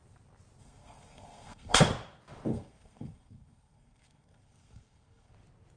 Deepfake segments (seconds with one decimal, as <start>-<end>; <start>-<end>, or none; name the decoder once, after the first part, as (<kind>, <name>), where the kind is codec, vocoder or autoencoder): 0.6-1.8 (codec, SNAC); 2.5-5.3